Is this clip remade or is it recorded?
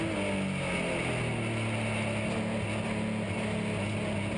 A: recorded